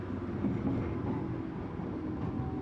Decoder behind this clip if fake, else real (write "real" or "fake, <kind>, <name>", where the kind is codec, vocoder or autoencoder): real